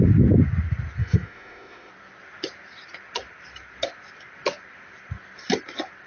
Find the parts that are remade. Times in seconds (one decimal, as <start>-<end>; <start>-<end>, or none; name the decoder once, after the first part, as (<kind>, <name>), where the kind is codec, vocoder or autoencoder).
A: 1.0-1.9 (autoencoder, DAC-VAE)